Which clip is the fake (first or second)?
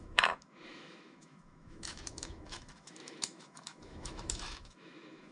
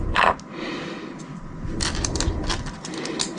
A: first